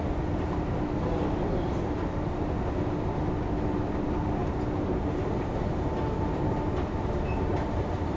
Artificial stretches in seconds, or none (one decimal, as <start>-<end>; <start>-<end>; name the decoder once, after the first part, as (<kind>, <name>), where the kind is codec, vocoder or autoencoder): none